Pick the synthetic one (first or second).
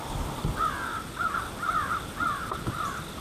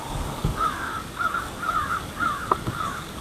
second